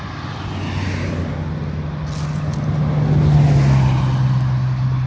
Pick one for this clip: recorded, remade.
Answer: recorded